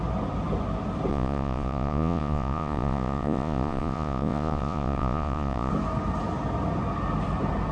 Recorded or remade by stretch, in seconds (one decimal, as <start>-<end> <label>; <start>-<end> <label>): 0.0-1.1 recorded; 1.1-5.7 remade; 5.7-7.7 recorded